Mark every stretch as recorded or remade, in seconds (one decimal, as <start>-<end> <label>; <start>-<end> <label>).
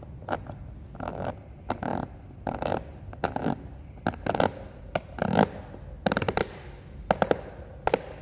0.0-8.2 recorded